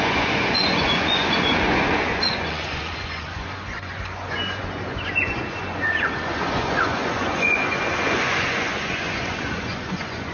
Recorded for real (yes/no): no